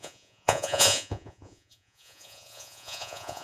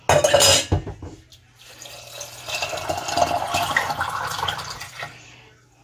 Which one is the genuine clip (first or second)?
second